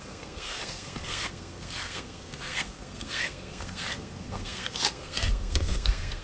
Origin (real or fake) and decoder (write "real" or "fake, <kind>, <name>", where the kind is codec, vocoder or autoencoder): fake, codec, SNAC